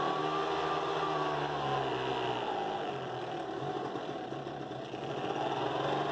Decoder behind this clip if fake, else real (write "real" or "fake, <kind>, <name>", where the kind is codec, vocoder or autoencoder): real